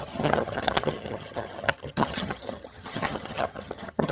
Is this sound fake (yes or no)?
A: yes